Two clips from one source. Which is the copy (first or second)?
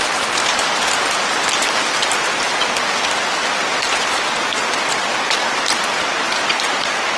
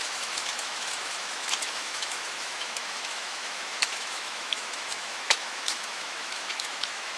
second